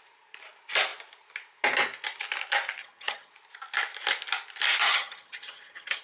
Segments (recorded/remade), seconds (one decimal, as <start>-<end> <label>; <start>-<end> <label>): 0.0-2.8 recorded; 2.8-3.3 remade; 3.3-4.8 recorded; 4.8-6.0 remade